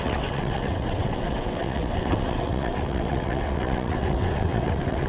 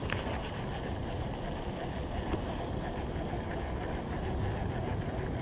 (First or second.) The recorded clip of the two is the second